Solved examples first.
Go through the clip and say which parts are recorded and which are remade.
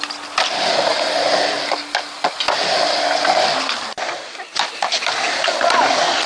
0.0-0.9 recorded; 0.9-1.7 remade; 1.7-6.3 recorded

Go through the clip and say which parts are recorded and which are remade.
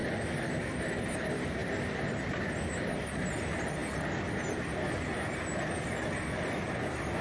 0.0-7.2 recorded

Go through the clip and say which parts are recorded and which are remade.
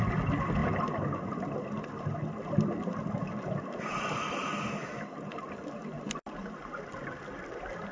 0.0-7.9 recorded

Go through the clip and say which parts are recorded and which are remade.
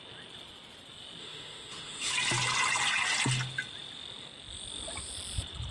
0.0-1.2 recorded; 1.2-2.1 remade; 2.1-5.7 recorded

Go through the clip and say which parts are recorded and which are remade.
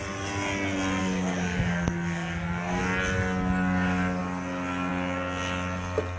0.0-1.0 recorded; 1.0-2.8 remade; 2.8-6.2 recorded